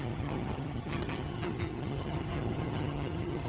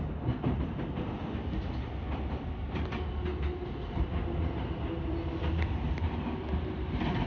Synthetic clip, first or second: first